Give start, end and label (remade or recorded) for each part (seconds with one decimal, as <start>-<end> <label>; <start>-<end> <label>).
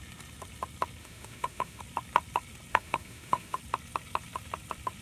0.0-1.0 recorded; 1.0-1.8 remade; 1.8-2.7 recorded; 2.7-3.6 remade; 3.6-5.0 recorded